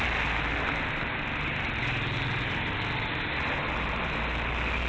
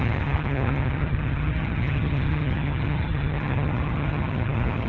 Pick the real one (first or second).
first